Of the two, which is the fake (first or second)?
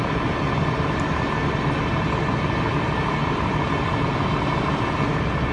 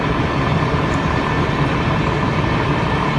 second